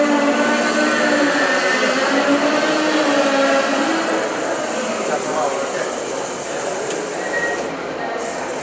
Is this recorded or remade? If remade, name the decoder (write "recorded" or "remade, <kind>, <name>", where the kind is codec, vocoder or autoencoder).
recorded